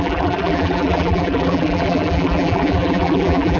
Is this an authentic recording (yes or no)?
no